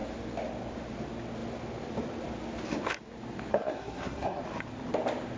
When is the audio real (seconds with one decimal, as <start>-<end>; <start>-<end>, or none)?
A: 0.0-3.5; 4.4-5.4